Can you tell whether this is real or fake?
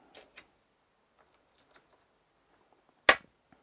real